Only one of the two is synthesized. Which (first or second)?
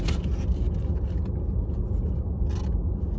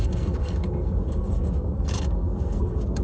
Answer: second